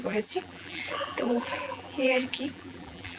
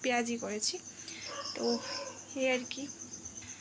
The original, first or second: second